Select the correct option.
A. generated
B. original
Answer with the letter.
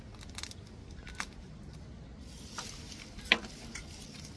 B